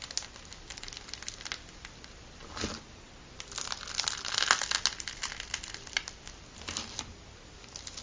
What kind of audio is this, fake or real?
real